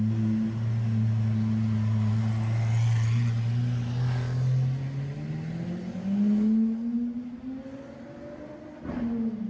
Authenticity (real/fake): real